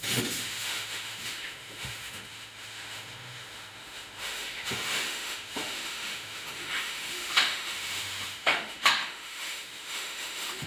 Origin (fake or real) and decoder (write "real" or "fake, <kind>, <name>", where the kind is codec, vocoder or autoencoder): fake, autoencoder, DAC-VAE